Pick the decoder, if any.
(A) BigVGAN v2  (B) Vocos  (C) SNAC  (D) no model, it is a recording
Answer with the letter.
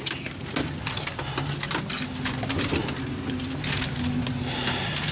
D